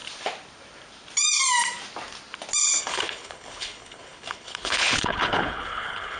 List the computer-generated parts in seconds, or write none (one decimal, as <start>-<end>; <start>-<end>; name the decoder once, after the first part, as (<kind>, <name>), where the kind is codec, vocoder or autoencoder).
2.8-6.2 (codec, HILCodec)

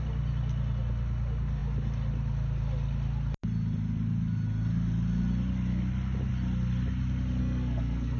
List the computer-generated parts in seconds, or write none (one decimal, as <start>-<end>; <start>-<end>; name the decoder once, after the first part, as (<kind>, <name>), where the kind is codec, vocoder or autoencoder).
7.4-8.2 (codec, SNAC)

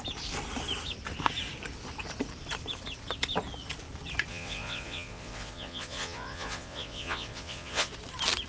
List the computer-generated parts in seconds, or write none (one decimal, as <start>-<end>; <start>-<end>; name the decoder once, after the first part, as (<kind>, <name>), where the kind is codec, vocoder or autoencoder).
4.3-7.9 (vocoder, Vocos)

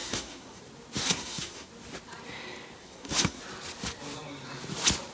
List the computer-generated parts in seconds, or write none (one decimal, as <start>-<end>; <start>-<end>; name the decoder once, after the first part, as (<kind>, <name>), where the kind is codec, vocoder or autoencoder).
0.0-0.6 (codec, SNAC); 1.0-1.7; 2.8-3.4

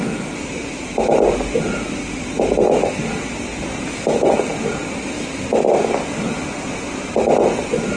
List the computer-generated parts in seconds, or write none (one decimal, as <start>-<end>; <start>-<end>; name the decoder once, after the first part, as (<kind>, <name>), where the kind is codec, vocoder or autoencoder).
none